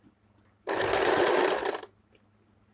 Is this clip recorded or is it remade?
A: recorded